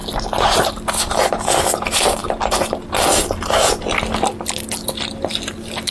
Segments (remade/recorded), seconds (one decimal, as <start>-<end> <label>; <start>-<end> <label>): 0.0-5.9 recorded